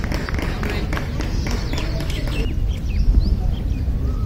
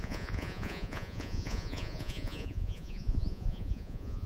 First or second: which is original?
first